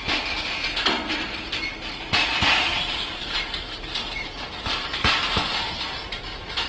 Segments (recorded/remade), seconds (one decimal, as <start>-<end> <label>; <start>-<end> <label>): 0.0-2.7 recorded; 2.7-5.7 remade; 5.7-6.7 recorded